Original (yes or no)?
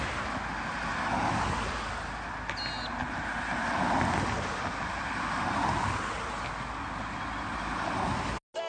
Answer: yes